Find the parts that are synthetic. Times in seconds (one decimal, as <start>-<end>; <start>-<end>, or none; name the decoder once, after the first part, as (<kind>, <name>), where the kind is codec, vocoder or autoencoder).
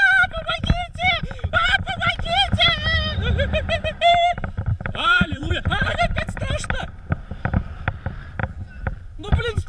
4.7-5.5 (vocoder, BigVGAN v2); 8.4-9.0